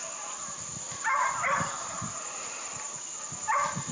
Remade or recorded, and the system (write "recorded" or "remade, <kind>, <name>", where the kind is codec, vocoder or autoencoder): recorded